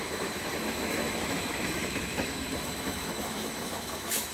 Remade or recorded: remade